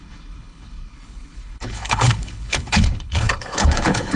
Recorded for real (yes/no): no